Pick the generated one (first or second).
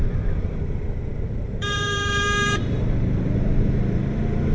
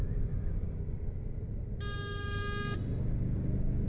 first